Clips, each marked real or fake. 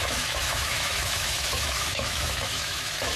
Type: fake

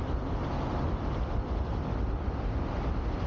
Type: real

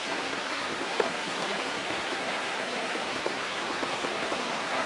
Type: fake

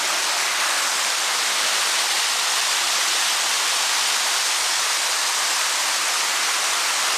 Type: real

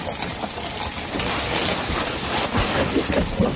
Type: real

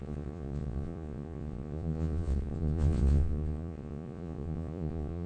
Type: fake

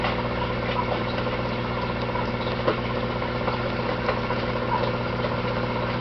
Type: real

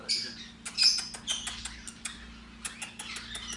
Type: real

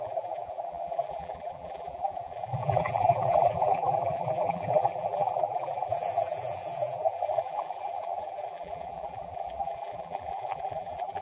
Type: fake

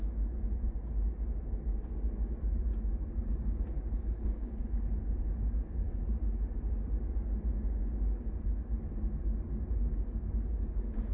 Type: real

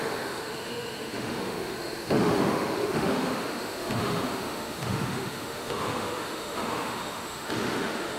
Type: fake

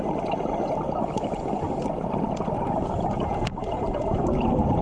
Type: fake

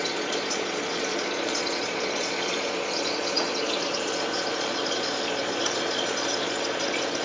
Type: fake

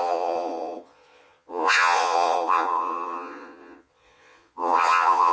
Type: fake